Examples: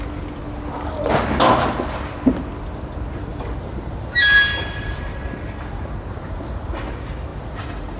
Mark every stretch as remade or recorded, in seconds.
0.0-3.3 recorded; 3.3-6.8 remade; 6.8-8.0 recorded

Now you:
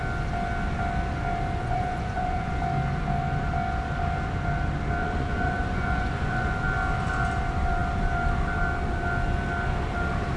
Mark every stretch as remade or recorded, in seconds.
0.0-1.6 recorded; 1.6-2.5 remade; 2.5-5.0 recorded; 5.0-6.5 remade; 6.5-10.4 recorded

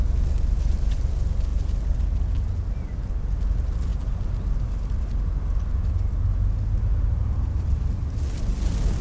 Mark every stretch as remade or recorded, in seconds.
0.0-9.0 recorded

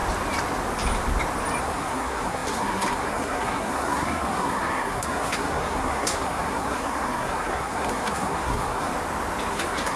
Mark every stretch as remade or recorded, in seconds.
0.0-1.6 recorded; 1.6-8.9 remade; 8.9-9.5 recorded; 9.5-10.0 remade

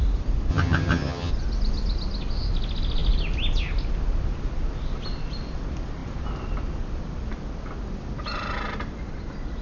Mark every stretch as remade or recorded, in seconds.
0.0-0.5 recorded; 0.5-1.3 remade; 1.3-9.6 recorded